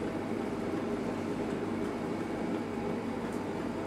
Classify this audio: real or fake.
fake